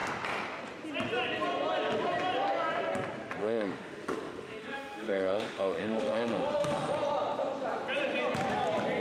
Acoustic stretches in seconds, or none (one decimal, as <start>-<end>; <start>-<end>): 0.0-3.4; 6.9-9.0